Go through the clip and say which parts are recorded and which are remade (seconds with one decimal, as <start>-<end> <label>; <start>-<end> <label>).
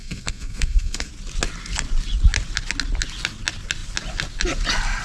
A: 0.0-1.1 remade; 1.1-5.0 recorded